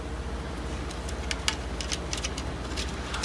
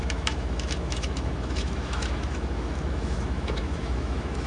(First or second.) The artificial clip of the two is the second